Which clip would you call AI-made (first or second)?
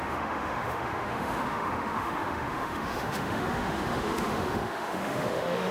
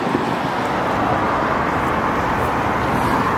first